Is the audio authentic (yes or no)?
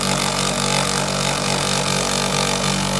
yes